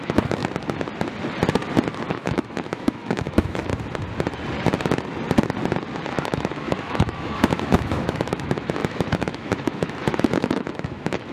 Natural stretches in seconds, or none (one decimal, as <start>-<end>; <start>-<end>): 0.4-2.1; 3.7-6.1